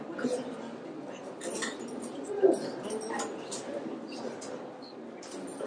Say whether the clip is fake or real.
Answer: real